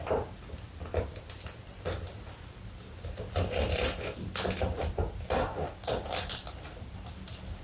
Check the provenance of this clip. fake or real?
real